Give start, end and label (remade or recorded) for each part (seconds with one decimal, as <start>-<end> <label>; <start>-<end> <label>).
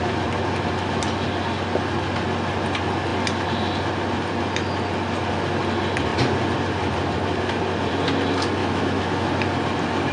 0.0-8.6 recorded; 8.6-9.3 remade; 9.3-10.1 recorded